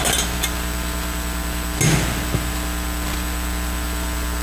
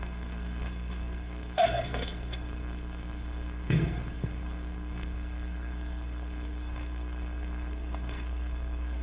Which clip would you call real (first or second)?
first